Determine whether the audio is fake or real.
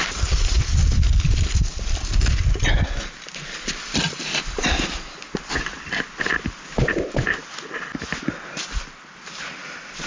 real